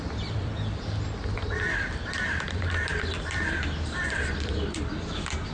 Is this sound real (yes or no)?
no